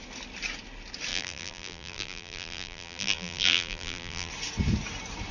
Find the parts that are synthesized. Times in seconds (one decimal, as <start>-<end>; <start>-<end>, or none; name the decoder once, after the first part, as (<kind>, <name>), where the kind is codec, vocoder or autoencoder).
1.1-4.3 (vocoder, BigVGAN v2)